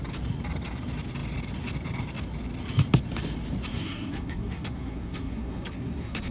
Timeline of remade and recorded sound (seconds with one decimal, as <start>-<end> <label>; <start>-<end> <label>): 0.0-3.7 recorded; 3.7-6.3 remade